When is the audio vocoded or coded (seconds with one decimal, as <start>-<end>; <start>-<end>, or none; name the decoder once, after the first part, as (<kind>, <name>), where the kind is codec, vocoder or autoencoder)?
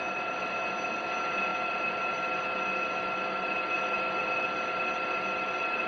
none